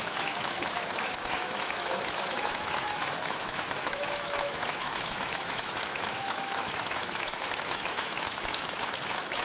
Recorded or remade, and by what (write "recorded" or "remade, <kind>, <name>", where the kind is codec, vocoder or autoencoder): remade, autoencoder, DAC-VAE